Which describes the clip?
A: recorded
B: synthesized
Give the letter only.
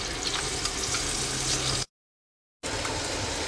A